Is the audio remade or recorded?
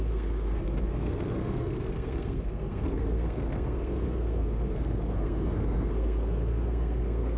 remade